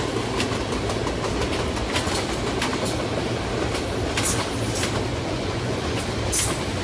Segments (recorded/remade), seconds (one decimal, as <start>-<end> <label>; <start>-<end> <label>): 0.0-5.1 recorded; 5.1-6.0 remade; 6.0-6.8 recorded